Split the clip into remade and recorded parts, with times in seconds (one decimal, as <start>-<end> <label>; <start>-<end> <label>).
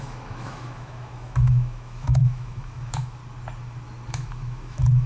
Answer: 0.0-3.2 remade; 3.2-4.1 recorded; 4.1-5.1 remade